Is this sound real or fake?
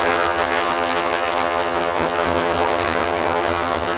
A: fake